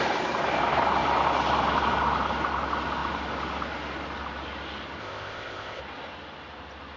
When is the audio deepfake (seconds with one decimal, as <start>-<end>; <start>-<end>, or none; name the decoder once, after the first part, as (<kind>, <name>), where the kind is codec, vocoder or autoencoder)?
5.0-5.8 (codec, ZipCodec)